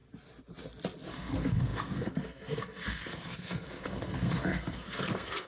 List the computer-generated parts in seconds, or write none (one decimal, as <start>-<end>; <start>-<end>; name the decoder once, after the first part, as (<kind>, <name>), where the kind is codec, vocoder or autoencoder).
1.1-5.5 (codec, SNAC)